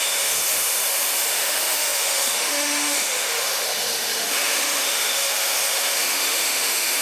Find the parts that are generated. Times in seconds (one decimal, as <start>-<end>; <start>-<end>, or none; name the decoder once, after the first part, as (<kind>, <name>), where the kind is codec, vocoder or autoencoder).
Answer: 0.0-7.0 (autoencoder, DAC-VAE)

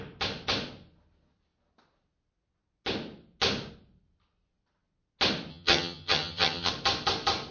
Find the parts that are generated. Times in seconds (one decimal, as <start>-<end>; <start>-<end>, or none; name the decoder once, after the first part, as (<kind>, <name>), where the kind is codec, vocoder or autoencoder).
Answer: 5.5-6.7 (vocoder, HiFi-GAN)

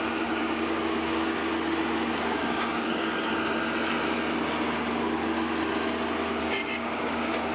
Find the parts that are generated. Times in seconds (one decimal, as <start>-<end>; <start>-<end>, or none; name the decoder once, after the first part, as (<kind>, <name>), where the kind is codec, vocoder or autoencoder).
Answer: 0.0-1.4 (codec, DAC); 2.2-3.3; 6.4-7.5

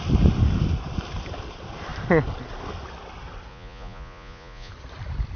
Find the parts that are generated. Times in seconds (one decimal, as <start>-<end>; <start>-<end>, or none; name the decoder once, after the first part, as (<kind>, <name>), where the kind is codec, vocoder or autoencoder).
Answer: 3.5-4.7 (vocoder, Vocos)